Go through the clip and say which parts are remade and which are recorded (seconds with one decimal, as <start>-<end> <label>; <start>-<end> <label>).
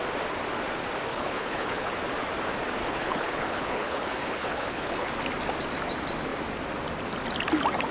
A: 0.0-1.1 recorded; 1.1-1.9 remade; 1.9-2.8 recorded; 2.8-5.1 remade; 5.1-7.9 recorded